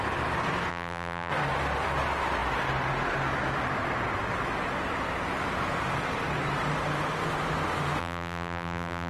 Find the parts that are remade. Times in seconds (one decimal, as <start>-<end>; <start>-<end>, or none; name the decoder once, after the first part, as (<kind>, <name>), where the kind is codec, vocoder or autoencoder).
0.7-1.3 (vocoder, BigVGAN v2); 8.0-9.1